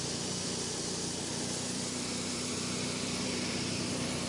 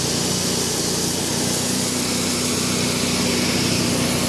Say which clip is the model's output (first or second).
first